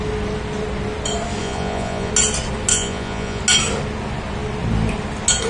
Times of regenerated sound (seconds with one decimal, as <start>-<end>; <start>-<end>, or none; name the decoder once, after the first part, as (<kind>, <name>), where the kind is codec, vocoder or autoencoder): 1.4-2.1 (vocoder, Vocos); 2.7-3.4